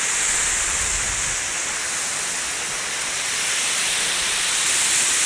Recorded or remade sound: recorded